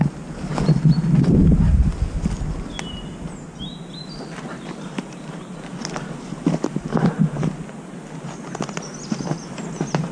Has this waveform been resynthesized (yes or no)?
no